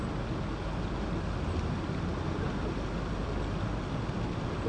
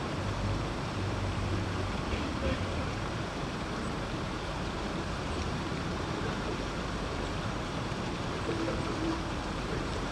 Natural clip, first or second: first